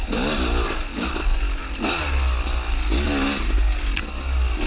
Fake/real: real